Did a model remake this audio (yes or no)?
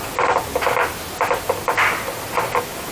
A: no